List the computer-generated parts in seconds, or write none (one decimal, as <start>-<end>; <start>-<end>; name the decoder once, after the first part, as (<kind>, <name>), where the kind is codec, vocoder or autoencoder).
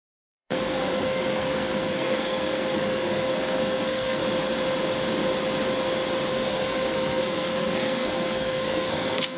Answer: 0.0-4.2 (codec, SNAC); 6.3-9.4